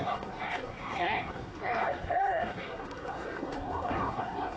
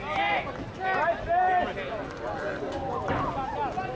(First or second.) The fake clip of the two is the first